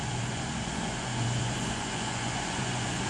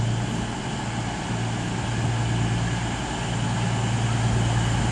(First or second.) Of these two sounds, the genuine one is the second